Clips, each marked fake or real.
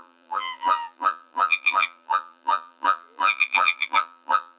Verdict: fake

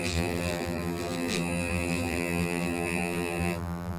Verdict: fake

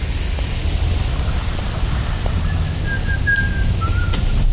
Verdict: real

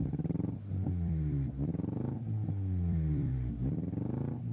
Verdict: fake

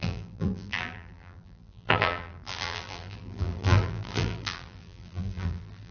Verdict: fake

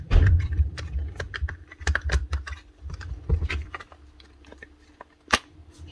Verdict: fake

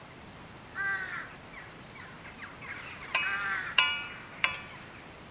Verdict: fake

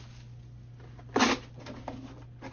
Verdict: real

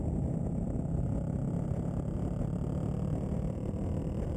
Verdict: real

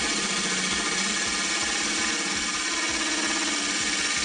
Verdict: real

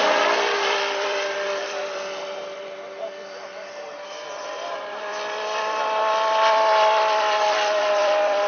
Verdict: fake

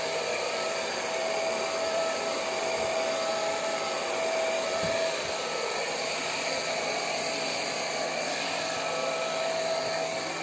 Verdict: fake